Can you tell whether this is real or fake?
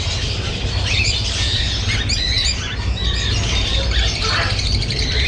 real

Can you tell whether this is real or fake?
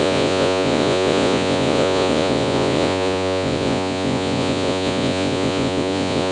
fake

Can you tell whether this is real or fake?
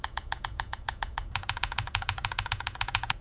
fake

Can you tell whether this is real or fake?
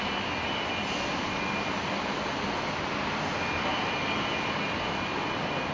real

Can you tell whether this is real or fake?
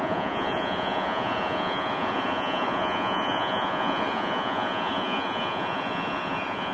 fake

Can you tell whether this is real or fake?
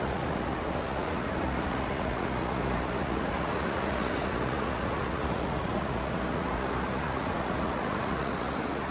fake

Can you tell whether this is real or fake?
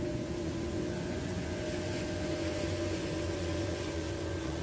fake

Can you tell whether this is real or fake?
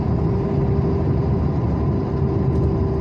real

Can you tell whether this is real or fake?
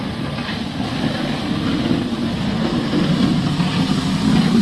real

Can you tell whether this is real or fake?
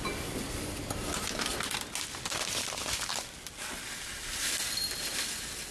real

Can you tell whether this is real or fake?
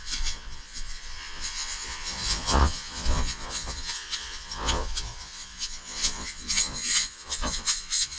fake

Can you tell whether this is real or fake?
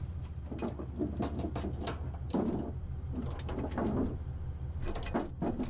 real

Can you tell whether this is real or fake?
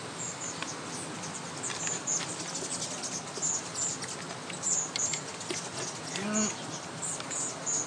real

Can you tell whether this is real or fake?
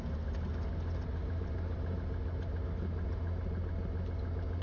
real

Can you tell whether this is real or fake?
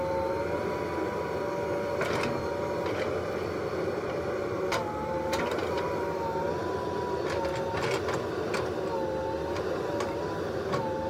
real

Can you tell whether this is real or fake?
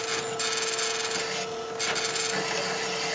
real